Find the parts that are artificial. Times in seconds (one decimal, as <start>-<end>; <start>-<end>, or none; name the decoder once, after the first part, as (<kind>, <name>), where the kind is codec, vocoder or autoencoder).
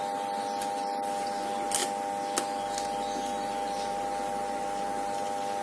none